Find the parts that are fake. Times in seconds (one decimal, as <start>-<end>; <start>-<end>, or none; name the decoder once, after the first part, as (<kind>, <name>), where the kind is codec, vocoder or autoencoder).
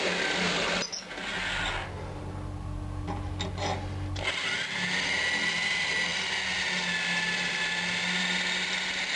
none